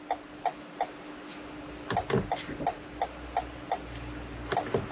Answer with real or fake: real